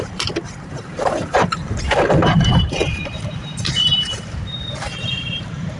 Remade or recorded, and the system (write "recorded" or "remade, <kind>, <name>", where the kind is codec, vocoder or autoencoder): remade, vocoder, BigVGAN v2